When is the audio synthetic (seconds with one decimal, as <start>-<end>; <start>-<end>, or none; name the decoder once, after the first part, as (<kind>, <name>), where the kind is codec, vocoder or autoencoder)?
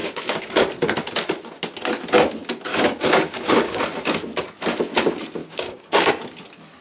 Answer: 0.0-0.5 (codec, DAC); 2.7-3.8; 5.4-6.1